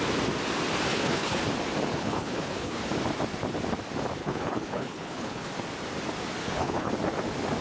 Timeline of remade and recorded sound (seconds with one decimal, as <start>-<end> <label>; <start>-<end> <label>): 0.0-0.9 recorded; 0.9-1.4 remade; 1.4-1.9 recorded; 1.9-2.8 remade; 2.8-4.2 recorded; 4.2-5.5 remade; 5.5-6.4 recorded; 6.4-6.9 remade; 6.9-7.6 recorded